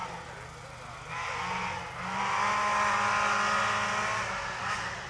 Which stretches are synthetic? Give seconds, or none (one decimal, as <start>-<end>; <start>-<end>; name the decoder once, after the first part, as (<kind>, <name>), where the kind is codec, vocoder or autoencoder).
none